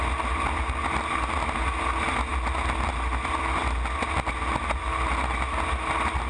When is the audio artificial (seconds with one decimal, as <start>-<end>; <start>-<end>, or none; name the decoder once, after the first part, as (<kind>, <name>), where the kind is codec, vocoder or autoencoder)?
none